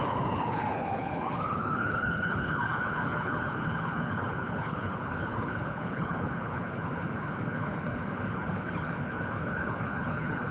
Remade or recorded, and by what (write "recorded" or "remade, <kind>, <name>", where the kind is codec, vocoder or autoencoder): remade, codec, HILCodec